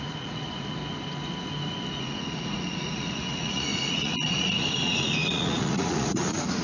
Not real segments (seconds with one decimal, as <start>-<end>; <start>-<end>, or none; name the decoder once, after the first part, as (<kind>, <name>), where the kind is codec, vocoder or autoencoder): 0.0-0.8 (vocoder, Vocos); 2.0-6.6